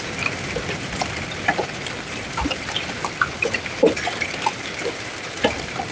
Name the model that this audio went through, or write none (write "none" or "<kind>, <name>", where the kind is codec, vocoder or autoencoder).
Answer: vocoder, BigVGAN v2